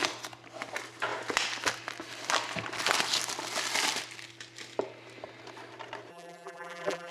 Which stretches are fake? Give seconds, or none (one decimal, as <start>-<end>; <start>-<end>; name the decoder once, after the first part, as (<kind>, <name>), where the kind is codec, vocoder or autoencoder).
6.1-7.1 (vocoder, BigVGAN v2)